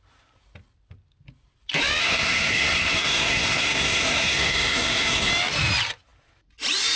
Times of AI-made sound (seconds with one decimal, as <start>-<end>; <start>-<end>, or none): 2.0-5.3